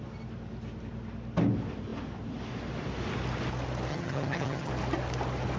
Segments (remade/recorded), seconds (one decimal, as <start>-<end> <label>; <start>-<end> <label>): 0.0-3.9 recorded; 3.9-4.7 remade; 4.7-5.6 recorded